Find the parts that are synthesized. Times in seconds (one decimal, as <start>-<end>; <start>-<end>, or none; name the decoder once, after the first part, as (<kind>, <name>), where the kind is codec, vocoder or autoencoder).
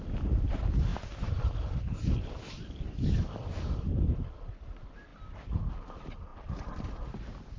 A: 5.1-5.6 (vocoder, BigVGAN v2); 6.3-7.6